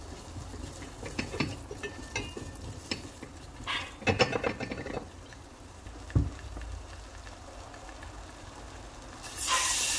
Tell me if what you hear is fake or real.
real